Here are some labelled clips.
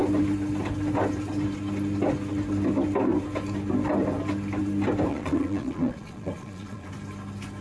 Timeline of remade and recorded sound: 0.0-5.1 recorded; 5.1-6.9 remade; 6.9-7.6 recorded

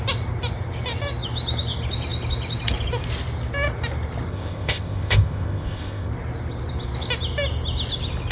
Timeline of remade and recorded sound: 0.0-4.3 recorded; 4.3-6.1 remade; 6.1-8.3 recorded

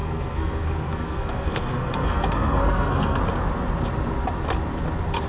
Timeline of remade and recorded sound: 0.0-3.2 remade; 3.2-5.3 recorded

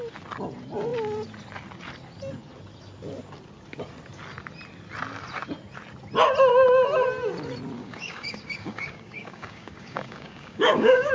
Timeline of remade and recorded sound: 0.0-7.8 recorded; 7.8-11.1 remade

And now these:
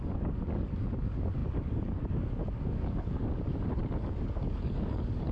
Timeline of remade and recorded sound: 0.0-5.3 remade